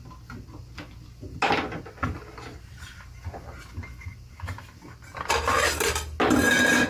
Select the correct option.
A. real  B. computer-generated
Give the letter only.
A